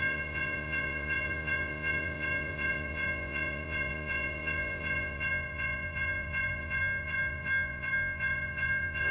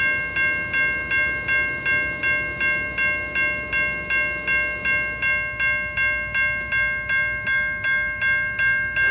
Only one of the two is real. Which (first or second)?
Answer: second